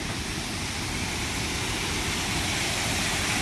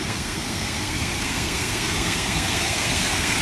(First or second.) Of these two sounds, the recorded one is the first